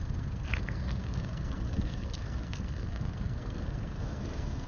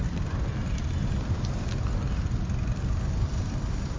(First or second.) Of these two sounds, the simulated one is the first